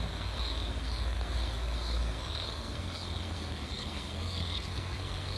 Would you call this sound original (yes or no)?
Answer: no